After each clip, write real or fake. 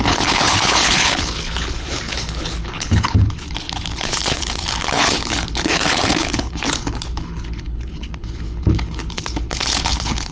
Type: fake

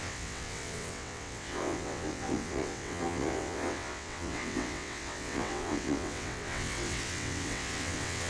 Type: fake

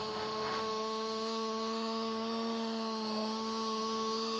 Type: fake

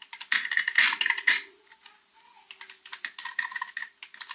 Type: real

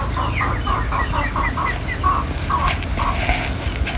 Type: real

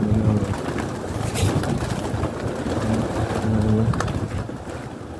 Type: real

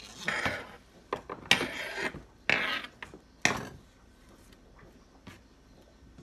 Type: real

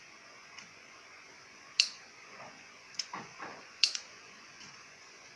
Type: fake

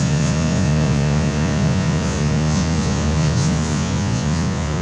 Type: fake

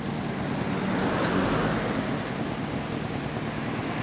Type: real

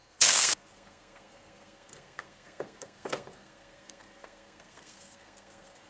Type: fake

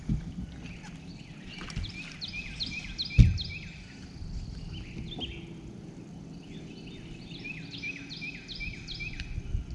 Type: real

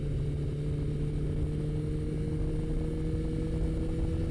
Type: real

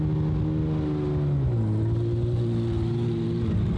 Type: real